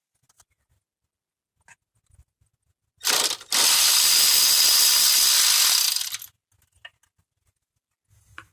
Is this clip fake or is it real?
real